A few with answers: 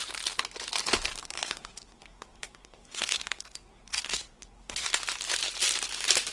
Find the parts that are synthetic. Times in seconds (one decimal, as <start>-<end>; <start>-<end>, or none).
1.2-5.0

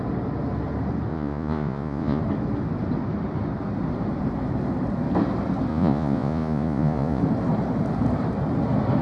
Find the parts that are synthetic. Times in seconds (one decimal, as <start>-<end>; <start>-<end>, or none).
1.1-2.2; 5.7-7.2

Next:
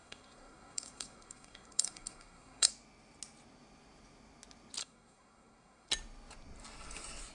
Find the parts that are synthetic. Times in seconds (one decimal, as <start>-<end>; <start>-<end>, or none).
0.0-2.7; 4.8-5.9

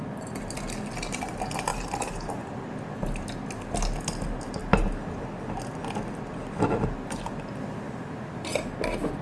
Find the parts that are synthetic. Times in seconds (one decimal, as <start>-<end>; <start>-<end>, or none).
1.7-2.3

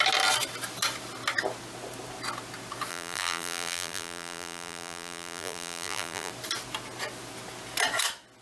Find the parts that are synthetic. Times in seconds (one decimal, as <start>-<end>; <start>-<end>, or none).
2.9-6.3

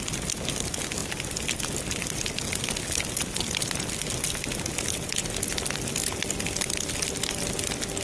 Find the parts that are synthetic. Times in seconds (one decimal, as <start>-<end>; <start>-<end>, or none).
none

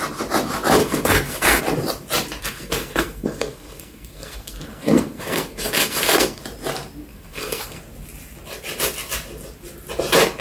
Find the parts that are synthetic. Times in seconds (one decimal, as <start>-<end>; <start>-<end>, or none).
0.8-1.6; 2.4-6.4; 7.1-7.8